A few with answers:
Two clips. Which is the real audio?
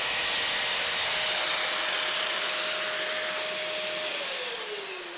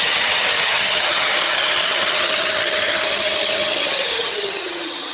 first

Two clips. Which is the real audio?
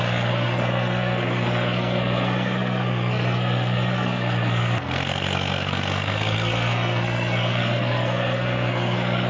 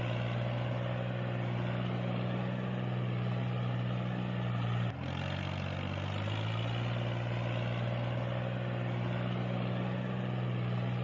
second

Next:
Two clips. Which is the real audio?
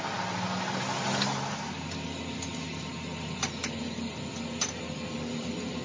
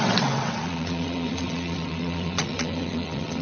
first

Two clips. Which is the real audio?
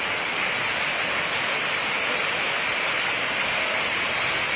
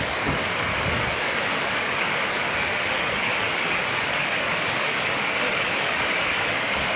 first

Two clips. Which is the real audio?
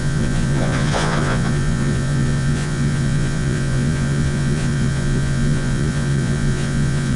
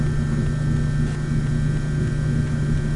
second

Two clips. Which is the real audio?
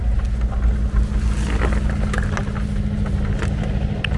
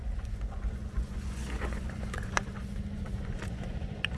first